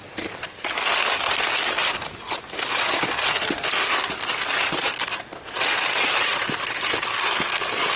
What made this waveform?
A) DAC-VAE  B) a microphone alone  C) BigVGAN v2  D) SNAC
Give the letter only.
B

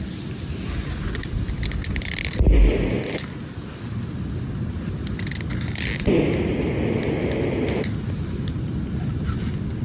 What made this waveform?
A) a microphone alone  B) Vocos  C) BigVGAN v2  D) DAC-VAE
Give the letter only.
A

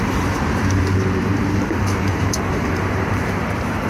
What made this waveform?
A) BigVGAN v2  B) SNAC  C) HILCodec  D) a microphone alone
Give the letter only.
A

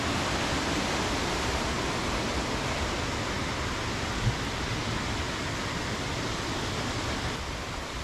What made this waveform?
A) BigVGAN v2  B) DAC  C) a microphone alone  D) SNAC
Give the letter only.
C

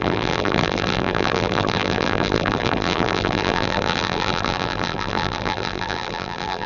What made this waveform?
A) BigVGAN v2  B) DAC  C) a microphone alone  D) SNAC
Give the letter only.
A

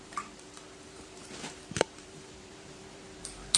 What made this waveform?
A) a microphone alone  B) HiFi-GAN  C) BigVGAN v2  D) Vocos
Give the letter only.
C